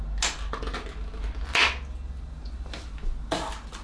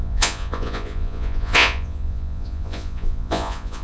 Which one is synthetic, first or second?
second